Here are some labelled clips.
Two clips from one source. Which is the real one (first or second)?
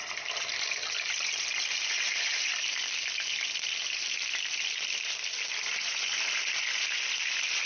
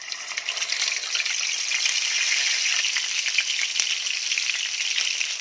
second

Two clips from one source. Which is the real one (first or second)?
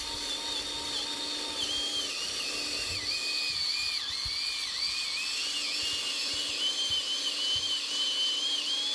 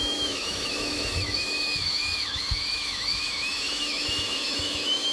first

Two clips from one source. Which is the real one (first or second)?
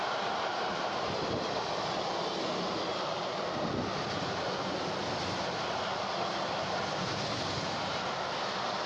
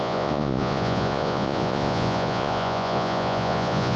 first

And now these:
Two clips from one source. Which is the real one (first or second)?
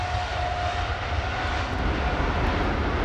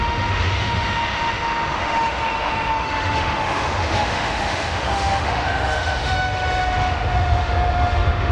first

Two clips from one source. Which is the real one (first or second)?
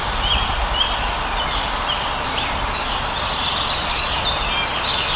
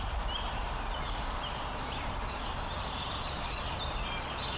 first